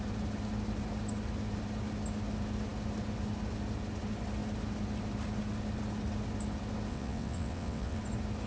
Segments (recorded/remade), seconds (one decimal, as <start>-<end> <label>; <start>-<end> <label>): 0.0-6.9 recorded; 6.9-8.0 remade; 8.0-8.5 recorded